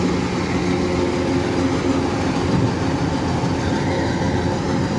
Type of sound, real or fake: real